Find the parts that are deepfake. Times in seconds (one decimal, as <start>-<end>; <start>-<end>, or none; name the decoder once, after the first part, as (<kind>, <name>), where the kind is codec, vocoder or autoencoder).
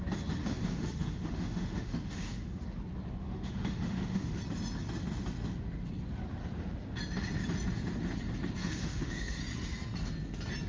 0.4-2.6 (autoencoder, DAC-VAE); 3.2-4.4; 8.6-9.4